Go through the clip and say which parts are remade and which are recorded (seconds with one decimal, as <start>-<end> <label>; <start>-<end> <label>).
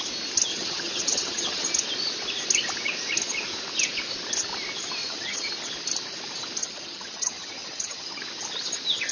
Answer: 0.0-0.5 recorded; 0.5-1.7 remade; 1.7-5.0 recorded; 5.0-5.5 remade; 5.5-6.6 recorded; 6.6-8.2 remade; 8.2-9.1 recorded